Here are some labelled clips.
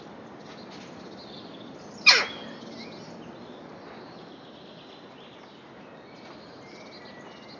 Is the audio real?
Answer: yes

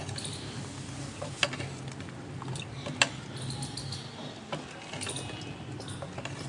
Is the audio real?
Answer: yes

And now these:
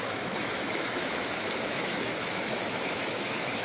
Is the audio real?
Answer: no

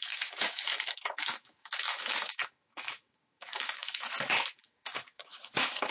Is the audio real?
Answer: no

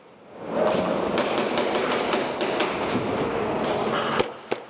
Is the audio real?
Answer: yes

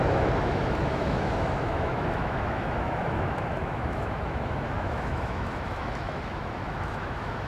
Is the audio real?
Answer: no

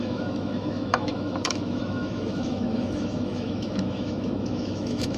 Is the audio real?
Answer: no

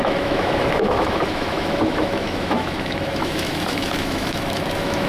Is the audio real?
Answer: no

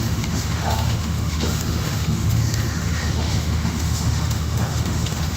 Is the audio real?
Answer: no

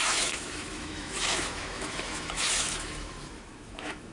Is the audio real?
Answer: no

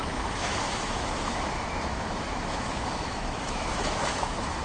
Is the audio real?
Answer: no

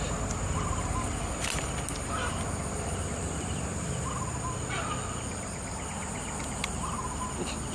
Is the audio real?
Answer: yes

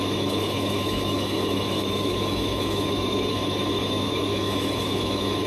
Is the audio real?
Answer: no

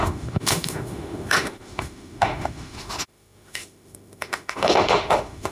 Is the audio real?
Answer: no